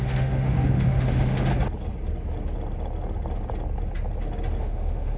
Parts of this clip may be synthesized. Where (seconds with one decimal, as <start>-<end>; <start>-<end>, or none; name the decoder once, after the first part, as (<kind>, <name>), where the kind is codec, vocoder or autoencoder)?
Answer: 0.0-1.5 (autoencoder, DAC-VAE); 4.6-5.2